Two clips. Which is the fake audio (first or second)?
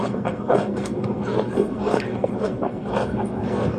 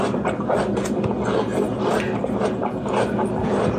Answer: first